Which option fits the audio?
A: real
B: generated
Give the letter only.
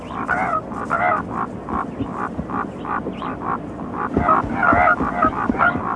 A